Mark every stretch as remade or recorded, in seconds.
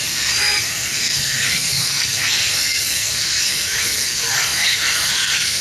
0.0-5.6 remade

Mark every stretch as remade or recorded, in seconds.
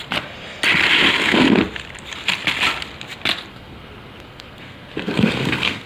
0.0-3.5 recorded; 3.5-5.9 remade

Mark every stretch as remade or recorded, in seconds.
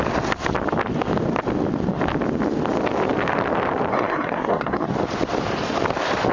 0.0-3.9 recorded; 3.9-4.9 remade; 4.9-6.3 recorded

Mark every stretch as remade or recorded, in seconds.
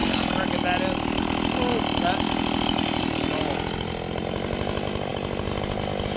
0.0-6.2 recorded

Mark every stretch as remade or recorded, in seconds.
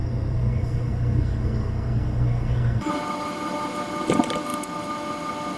0.0-2.9 remade; 2.9-5.6 recorded